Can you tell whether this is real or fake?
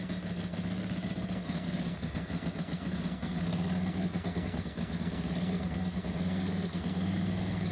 fake